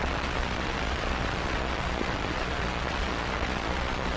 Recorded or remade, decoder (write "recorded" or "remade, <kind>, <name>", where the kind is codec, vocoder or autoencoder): remade, vocoder, Vocos